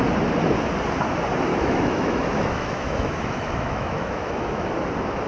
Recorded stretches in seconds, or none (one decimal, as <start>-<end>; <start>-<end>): 0.0-1.5; 4.7-5.3